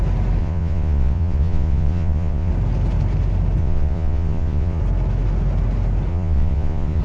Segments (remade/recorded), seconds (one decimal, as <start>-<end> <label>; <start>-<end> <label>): 0.0-0.4 recorded; 0.4-2.5 remade; 2.5-3.6 recorded; 3.6-4.8 remade; 4.8-6.1 recorded; 6.1-7.0 remade